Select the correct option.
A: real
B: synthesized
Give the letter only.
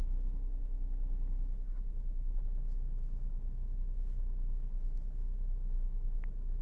A